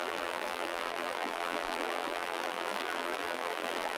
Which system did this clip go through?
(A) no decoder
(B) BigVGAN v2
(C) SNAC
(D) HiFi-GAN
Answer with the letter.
B